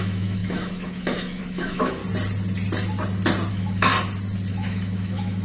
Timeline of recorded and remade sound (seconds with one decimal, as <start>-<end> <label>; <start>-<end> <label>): 0.0-2.0 remade; 2.0-3.5 recorded; 3.5-3.9 remade; 3.9-4.5 recorded; 4.5-5.4 remade